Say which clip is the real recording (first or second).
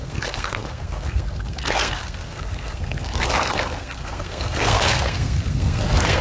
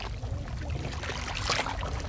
second